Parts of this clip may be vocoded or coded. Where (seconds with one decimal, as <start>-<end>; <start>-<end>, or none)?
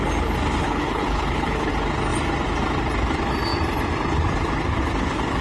0.6-1.7